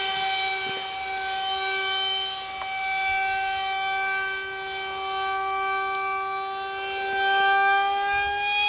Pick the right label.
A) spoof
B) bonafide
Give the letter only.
B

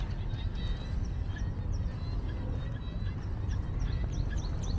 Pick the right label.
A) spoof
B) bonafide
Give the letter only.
B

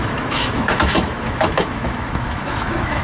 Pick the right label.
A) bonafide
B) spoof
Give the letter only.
B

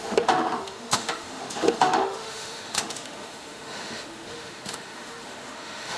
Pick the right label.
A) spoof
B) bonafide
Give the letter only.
A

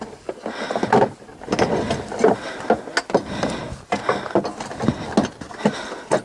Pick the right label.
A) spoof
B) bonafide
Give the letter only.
B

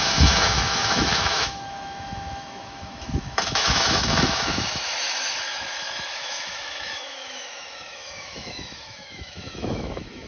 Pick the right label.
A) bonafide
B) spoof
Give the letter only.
B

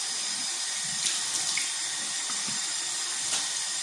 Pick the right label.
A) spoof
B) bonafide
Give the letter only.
B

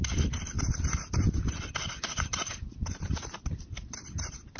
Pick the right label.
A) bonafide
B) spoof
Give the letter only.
A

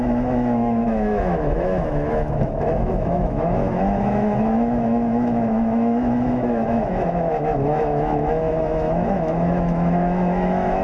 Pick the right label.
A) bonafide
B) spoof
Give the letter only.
B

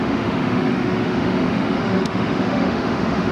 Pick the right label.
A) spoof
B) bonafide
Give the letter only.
A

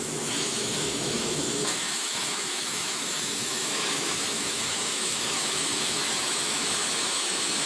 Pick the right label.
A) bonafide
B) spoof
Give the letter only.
B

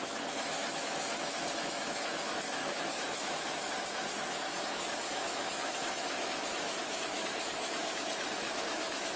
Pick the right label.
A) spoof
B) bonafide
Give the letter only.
A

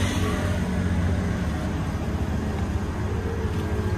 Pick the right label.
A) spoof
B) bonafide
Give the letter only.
B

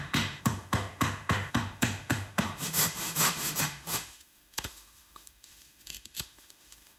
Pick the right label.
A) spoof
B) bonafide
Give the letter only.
A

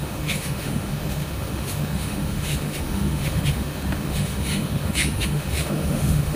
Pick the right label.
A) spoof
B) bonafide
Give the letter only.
A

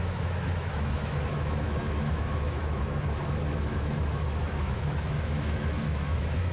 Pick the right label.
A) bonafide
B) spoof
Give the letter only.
B